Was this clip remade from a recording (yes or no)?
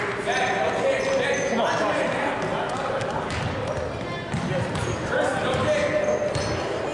no